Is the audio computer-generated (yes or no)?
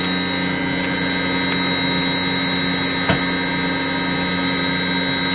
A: no